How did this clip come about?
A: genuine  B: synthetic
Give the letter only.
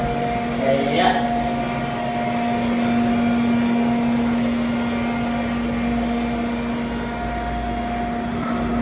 A